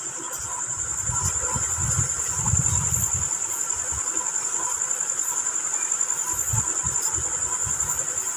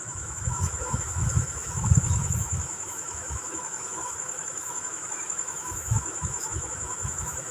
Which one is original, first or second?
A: first